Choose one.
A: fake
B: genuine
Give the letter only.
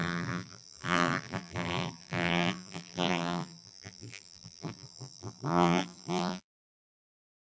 A